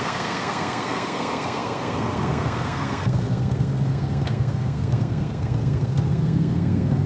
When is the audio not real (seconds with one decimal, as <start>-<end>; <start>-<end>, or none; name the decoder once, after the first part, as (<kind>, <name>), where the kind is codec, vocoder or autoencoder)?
0.0-7.1 (codec, SNAC)